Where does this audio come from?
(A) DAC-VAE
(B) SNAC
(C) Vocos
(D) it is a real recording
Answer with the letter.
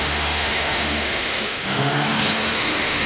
A